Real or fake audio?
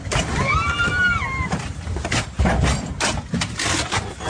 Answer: real